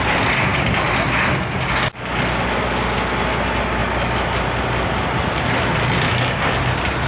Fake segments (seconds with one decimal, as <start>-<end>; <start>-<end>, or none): none